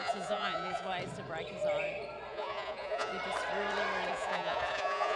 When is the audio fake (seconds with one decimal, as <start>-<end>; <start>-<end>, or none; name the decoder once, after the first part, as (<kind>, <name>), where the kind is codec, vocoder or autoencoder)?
0.0-0.9 (vocoder, Vocos); 2.3-3.1; 4.1-5.2